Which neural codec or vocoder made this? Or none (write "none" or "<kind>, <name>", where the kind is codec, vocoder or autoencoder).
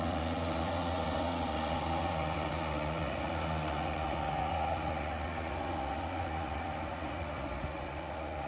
vocoder, Vocos